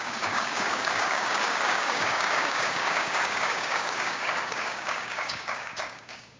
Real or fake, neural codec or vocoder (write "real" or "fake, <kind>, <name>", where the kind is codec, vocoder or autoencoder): fake, codec, DAC